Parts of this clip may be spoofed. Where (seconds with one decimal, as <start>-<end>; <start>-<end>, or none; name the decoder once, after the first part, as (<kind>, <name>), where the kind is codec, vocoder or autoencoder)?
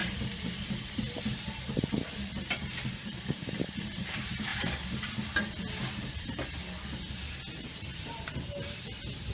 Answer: 2.2-4.5 (vocoder, BigVGAN v2); 6.1-6.6; 8.1-9.3